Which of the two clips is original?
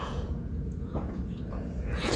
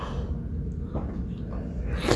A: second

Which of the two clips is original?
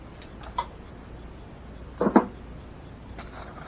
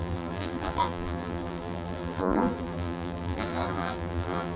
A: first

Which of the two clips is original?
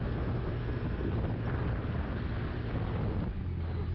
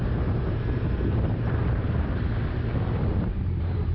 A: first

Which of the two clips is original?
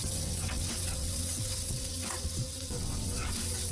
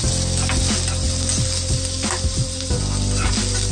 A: second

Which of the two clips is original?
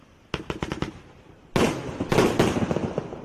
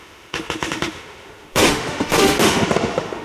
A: first